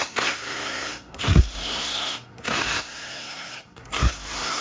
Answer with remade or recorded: remade